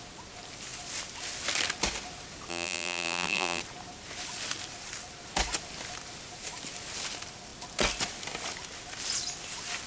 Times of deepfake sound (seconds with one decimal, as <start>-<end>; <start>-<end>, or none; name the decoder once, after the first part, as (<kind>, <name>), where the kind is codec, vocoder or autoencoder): 2.5-3.6 (vocoder, BigVGAN v2)